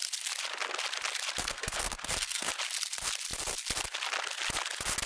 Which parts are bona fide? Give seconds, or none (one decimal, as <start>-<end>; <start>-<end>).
0.0-1.4; 2.5-5.1